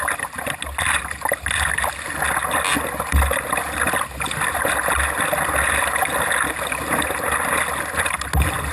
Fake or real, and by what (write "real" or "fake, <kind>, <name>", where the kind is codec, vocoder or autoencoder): real